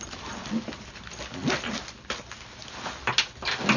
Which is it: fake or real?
real